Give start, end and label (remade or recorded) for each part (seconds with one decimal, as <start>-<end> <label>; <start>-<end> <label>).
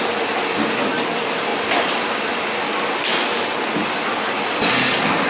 0.0-5.3 recorded